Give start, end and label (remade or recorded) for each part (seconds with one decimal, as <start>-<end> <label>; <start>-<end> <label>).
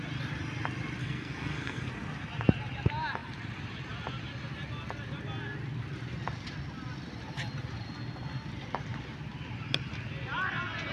0.0-1.0 recorded; 1.0-1.9 remade; 1.9-10.9 recorded